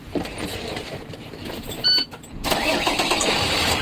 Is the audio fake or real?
fake